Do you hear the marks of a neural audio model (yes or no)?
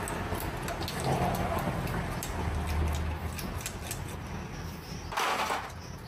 no